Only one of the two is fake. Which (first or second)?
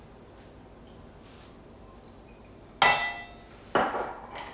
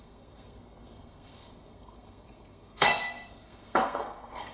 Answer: second